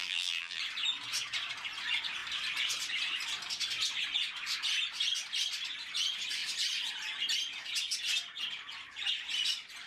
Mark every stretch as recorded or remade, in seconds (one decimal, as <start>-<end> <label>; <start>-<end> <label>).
0.0-0.6 remade; 0.6-9.9 recorded